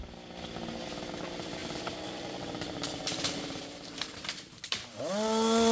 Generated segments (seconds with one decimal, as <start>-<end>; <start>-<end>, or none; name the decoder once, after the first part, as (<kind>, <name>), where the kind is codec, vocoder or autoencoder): 1.6-5.0 (vocoder, BigVGAN v2)